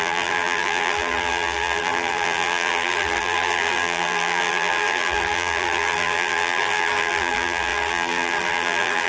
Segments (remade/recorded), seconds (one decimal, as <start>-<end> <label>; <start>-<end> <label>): 0.0-9.1 remade